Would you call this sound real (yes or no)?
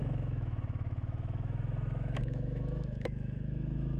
no